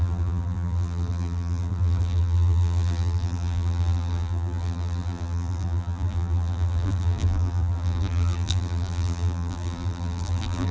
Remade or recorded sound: remade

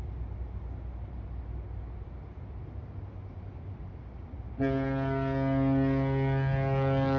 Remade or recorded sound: recorded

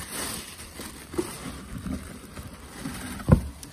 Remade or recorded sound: recorded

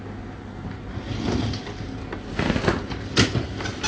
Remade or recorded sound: recorded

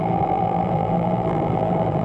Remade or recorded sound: remade